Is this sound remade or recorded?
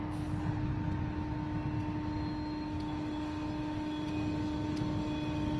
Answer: recorded